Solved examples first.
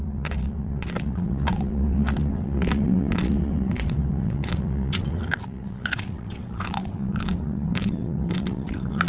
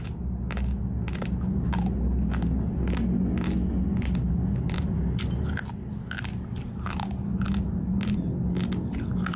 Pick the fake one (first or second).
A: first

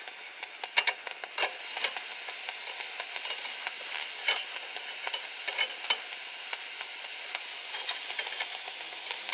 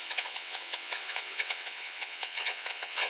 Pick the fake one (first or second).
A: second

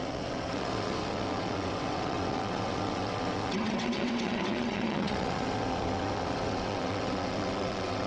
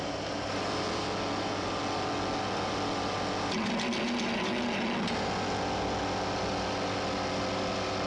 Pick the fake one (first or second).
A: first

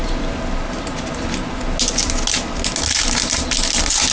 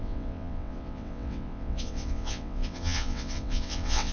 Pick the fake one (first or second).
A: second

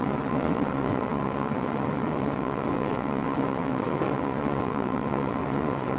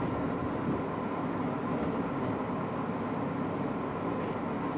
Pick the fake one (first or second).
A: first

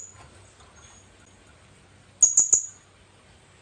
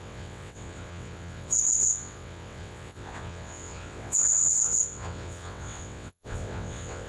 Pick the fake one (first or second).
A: second